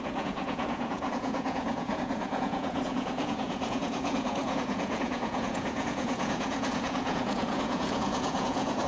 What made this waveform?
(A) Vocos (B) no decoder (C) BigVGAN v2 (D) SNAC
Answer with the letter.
A